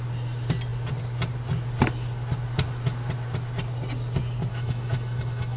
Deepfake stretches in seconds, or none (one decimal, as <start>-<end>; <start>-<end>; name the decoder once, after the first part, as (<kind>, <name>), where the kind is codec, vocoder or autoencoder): 4.5-5.6 (autoencoder, DAC-VAE)